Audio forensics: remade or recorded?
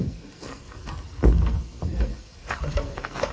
remade